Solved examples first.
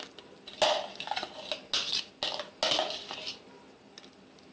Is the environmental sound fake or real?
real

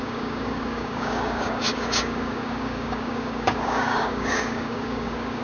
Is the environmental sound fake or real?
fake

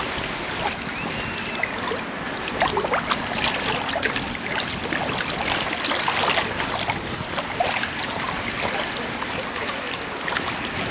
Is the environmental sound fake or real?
real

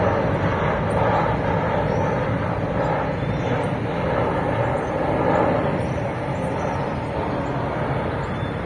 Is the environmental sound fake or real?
real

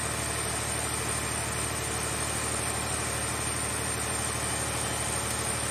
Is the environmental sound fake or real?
real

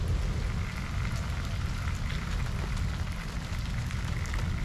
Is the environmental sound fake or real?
real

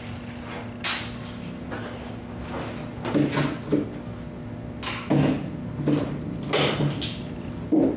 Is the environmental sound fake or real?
real